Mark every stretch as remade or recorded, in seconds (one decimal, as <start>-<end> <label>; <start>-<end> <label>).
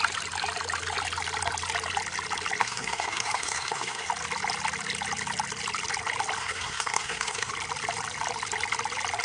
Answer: 0.0-2.6 recorded; 2.6-4.1 remade; 4.1-6.4 recorded; 6.4-7.5 remade; 7.5-9.2 recorded